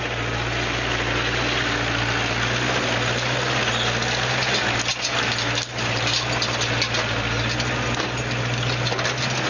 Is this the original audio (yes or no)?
yes